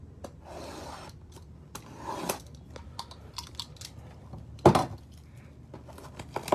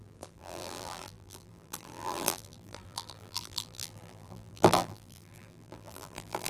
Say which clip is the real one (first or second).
first